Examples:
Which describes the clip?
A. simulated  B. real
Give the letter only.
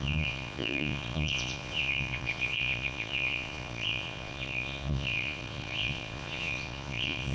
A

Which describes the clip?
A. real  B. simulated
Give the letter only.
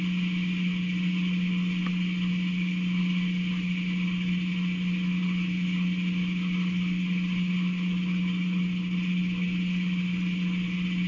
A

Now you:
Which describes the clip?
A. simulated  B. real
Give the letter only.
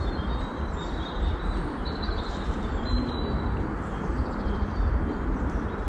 A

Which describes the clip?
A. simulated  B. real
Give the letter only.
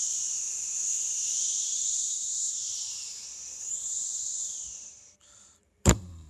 A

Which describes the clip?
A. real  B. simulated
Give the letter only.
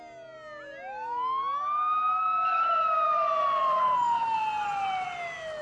A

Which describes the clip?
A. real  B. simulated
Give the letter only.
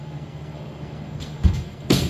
B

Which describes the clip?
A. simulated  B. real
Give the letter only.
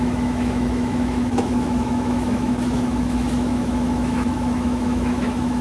A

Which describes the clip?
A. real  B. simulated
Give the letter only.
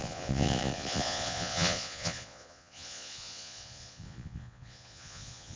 B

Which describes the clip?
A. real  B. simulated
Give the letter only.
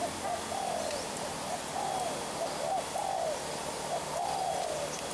A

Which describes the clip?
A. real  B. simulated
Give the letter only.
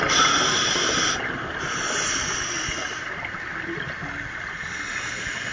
A